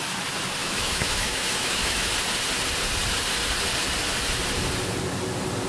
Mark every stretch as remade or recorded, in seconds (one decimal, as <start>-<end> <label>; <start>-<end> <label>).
0.0-0.6 recorded; 0.6-2.1 remade; 2.1-5.7 recorded